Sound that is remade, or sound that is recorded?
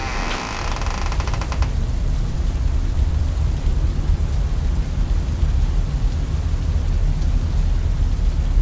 recorded